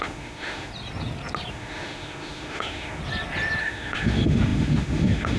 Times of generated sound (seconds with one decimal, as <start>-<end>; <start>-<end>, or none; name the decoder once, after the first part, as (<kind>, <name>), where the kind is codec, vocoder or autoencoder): 0.0-0.7 (autoencoder, DAC-VAE); 1.5-3.0; 3.6-5.4